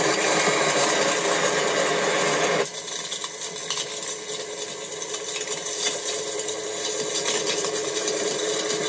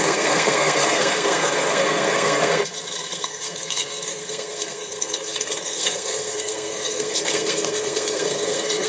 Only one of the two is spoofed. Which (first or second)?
second